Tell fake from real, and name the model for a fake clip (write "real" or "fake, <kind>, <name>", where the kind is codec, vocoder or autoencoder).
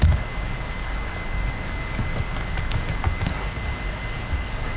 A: fake, codec, DAC